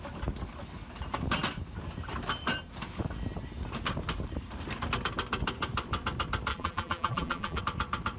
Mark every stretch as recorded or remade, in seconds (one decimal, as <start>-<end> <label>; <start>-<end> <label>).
0.0-6.5 recorded; 6.5-7.6 remade; 7.6-8.2 recorded